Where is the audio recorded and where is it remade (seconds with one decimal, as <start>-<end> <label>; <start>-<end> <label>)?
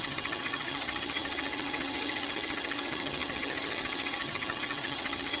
0.0-5.4 remade